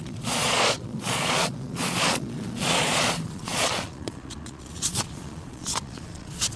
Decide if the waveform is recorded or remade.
remade